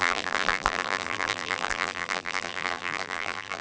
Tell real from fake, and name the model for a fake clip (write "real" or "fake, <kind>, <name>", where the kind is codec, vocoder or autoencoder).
fake, vocoder, BigVGAN v2